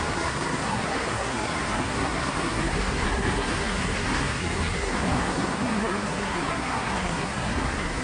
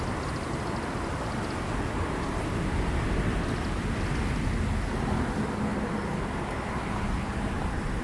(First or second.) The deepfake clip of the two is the first